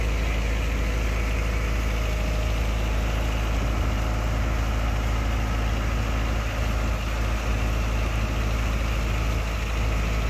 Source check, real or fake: real